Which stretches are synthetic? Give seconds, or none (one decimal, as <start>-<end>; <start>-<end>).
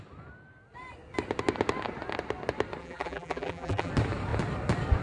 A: 2.8-3.9